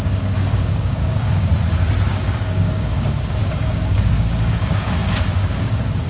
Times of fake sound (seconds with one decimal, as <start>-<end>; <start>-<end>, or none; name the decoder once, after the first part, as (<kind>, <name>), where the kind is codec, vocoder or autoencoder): 0.0-1.5 (codec, DAC); 2.1-6.1